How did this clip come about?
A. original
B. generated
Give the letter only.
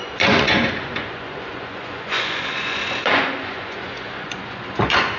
B